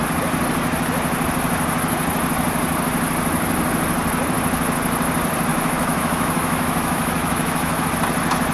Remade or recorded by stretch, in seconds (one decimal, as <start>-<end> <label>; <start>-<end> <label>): 0.0-5.5 recorded; 5.5-7.8 remade; 7.8-8.5 recorded

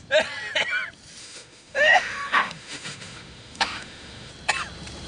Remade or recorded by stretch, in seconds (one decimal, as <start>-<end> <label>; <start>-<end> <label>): 0.0-1.2 recorded; 1.2-4.3 remade; 4.3-5.1 recorded